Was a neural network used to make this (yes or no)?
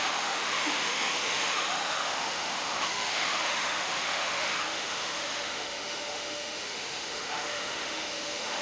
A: yes